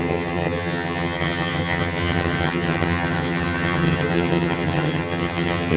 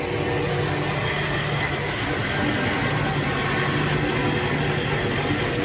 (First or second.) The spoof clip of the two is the first